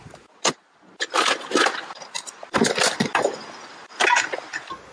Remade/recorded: recorded